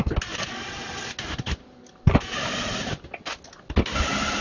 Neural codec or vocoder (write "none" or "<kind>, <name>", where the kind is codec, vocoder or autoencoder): none